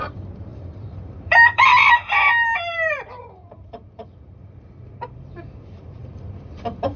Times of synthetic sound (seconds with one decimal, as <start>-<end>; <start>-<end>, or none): 0.0-7.0